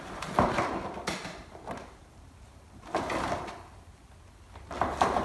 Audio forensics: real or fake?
real